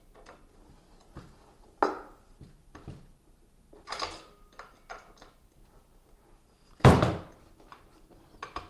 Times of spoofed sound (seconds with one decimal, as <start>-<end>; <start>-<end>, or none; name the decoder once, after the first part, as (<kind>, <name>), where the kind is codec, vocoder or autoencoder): none